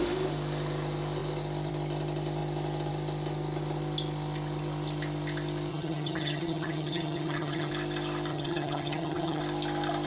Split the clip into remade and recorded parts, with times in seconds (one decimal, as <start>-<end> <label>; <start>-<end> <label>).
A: 0.0-5.7 recorded; 5.7-7.7 remade; 7.7-8.3 recorded; 8.3-9.4 remade; 9.4-10.1 recorded